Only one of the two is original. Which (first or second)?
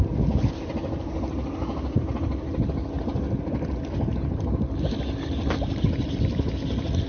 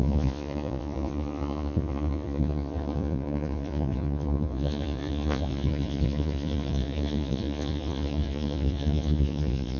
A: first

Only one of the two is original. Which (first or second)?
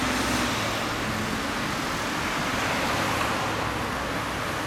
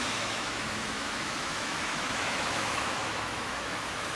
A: first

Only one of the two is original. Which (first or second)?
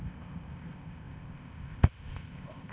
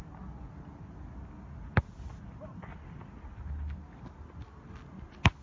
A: second